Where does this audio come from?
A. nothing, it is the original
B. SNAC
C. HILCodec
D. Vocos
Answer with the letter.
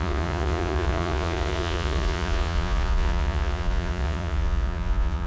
D